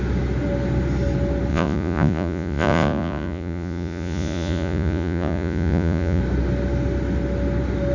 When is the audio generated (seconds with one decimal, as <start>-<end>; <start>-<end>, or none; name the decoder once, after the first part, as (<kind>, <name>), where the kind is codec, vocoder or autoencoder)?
1.5-6.2 (vocoder, Vocos)